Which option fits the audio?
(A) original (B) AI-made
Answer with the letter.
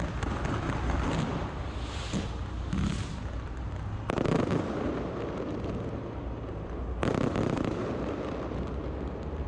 A